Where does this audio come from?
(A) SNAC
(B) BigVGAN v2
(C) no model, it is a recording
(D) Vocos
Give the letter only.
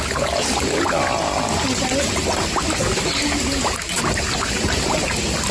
C